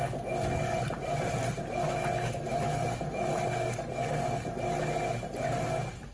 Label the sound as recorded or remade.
recorded